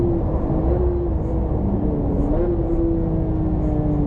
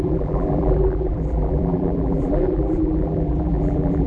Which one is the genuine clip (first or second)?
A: first